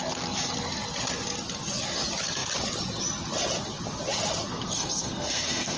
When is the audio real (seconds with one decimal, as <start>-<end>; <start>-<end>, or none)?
0.0-4.5